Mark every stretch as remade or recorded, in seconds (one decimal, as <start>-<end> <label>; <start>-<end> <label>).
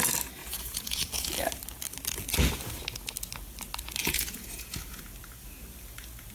0.0-0.4 recorded; 0.4-1.3 remade; 1.3-4.0 recorded; 4.0-5.0 remade; 5.0-6.3 recorded